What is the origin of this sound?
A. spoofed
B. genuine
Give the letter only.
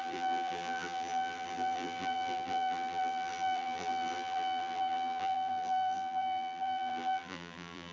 A